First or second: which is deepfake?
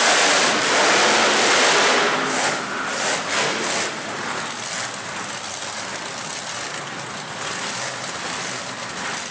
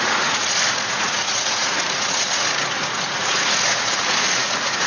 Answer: second